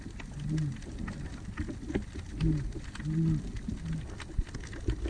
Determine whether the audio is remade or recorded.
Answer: recorded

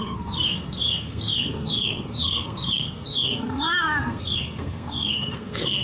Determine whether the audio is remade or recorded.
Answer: remade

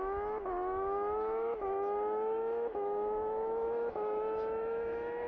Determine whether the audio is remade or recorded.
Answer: remade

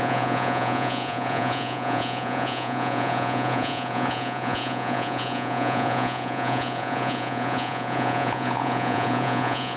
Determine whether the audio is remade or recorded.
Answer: remade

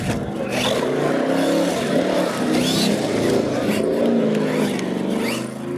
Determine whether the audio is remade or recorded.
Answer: recorded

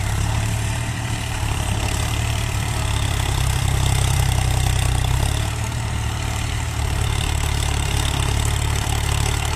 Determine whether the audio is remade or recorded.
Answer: remade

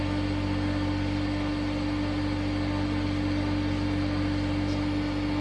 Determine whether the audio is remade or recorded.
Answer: recorded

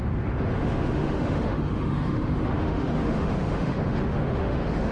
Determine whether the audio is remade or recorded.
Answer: remade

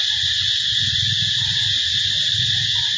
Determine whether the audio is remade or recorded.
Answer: recorded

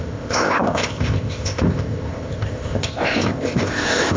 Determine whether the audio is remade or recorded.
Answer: remade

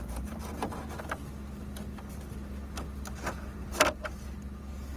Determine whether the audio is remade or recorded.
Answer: recorded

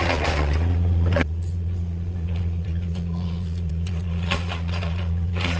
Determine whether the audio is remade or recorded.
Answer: remade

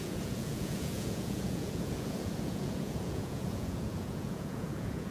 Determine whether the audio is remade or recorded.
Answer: remade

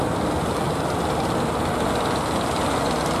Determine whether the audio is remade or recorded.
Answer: recorded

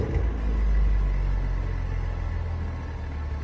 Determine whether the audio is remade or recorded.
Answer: recorded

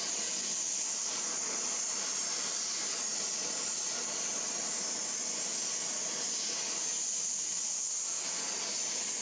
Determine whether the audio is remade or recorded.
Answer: recorded